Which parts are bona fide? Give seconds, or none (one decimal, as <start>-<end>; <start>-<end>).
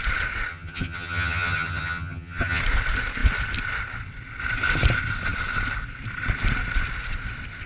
0.0-0.5; 2.6-7.7